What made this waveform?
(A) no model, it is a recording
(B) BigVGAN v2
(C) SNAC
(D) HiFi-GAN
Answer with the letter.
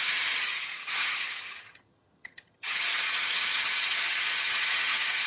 D